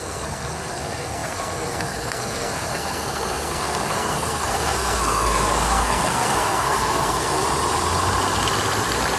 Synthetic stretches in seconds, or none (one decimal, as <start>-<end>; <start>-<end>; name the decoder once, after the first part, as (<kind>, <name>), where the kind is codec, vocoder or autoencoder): 0.0-7.4 (codec, SNAC)